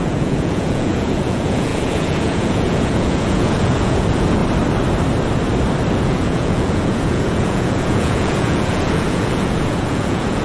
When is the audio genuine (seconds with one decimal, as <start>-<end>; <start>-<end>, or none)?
4.4-5.9